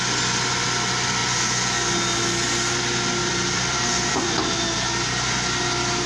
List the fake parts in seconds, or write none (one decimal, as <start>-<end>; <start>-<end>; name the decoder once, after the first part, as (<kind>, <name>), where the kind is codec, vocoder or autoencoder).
3.2-4.1 (vocoder, BigVGAN v2)

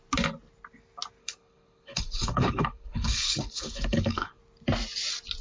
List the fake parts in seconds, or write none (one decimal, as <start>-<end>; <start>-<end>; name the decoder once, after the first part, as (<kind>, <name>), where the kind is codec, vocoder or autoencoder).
1.2-4.4 (codec, HILCodec)

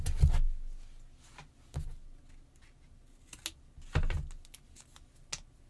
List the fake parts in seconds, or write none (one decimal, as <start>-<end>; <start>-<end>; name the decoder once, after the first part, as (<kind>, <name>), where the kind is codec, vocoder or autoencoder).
none

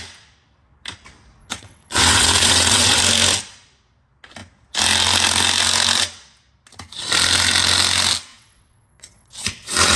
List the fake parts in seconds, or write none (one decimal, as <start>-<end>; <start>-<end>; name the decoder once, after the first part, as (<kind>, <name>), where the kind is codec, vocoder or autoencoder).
1.4-3.0 (vocoder, WaveNeXt); 8.3-10.0